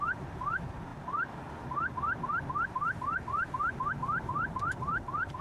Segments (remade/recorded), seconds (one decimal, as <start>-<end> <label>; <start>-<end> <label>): 0.0-0.9 remade; 0.9-3.9 recorded; 3.9-5.4 remade